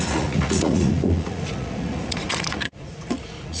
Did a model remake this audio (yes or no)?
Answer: yes